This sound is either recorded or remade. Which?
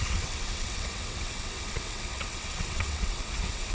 remade